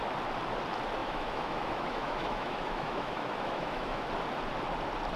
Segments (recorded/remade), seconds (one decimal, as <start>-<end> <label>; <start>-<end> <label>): 0.0-1.0 recorded; 1.0-4.1 remade; 4.1-5.2 recorded